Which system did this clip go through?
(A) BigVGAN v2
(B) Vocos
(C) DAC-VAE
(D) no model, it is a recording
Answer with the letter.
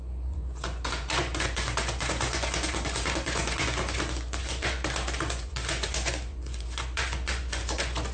B